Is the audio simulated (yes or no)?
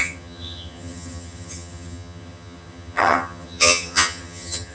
yes